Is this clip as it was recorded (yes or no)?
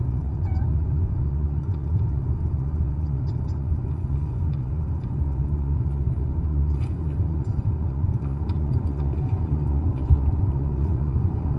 no